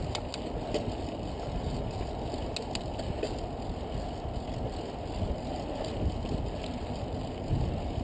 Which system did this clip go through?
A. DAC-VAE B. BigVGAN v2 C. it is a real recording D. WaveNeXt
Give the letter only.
C